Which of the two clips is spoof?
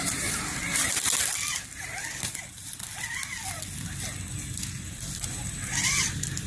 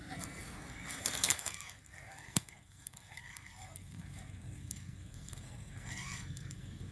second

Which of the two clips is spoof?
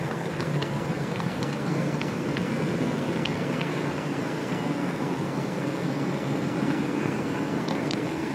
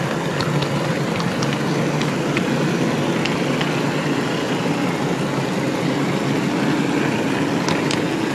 first